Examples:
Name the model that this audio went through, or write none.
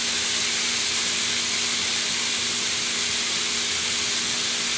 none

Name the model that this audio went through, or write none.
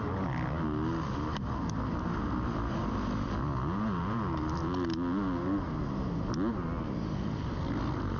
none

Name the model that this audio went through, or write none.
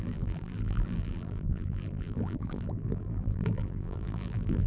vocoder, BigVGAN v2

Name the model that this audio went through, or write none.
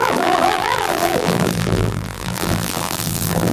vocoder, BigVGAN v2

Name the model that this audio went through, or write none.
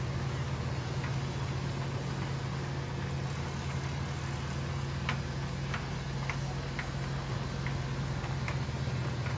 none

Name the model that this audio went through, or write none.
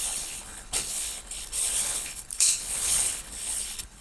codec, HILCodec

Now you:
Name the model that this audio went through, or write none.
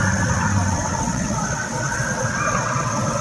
vocoder, WaveNeXt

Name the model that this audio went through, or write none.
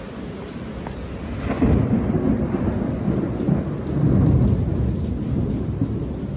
none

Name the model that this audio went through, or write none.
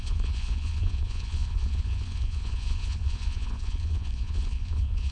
vocoder, Vocos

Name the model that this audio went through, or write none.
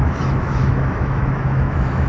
autoencoder, DAC-VAE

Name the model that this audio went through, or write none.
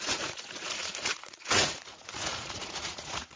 vocoder, Vocos